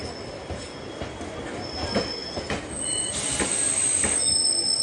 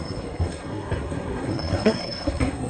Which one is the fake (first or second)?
second